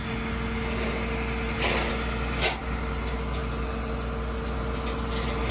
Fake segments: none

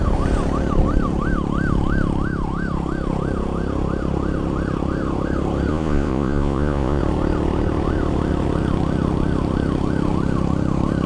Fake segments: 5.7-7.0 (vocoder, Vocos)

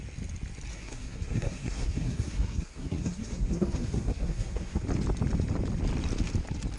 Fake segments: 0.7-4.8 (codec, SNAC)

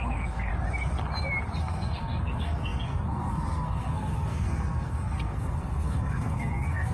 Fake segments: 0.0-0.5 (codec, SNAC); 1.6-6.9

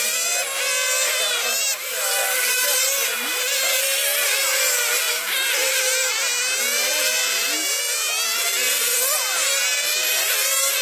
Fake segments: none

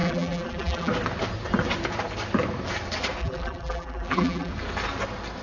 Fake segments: 0.0-0.9 (vocoder, BigVGAN v2); 3.2-4.5

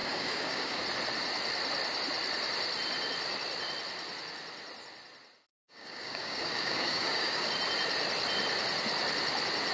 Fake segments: 0.0-0.8 (codec, DAC); 5.5-7.5